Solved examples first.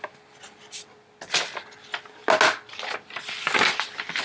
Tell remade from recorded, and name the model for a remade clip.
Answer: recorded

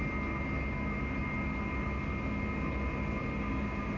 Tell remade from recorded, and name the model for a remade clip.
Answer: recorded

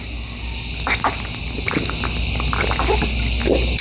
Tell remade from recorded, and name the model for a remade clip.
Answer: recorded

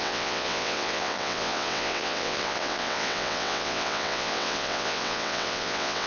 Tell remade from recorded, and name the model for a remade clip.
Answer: remade, vocoder, WaveNeXt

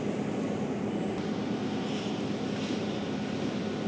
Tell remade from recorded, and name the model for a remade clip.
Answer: recorded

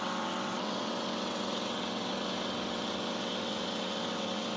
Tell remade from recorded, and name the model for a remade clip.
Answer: remade, vocoder, WaveNeXt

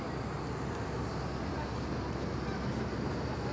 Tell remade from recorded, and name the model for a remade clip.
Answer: recorded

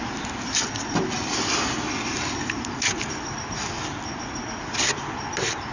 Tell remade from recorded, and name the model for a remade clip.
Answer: recorded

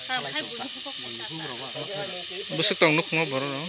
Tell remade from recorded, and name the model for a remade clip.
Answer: recorded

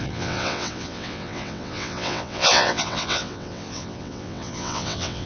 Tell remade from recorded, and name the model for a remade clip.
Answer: remade, vocoder, WaveNeXt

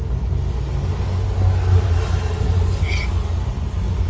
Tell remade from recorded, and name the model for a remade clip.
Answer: recorded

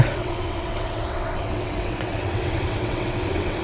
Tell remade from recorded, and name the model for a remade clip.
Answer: remade, vocoder, WaveNeXt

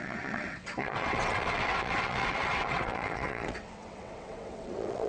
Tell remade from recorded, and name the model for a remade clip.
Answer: remade, vocoder, WaveNeXt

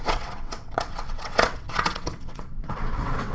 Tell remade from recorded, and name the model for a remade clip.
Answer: remade, vocoder, WaveNeXt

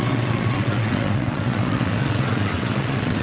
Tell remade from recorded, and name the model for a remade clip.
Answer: remade, vocoder, WaveNeXt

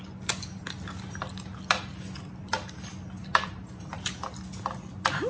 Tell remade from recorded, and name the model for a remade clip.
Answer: recorded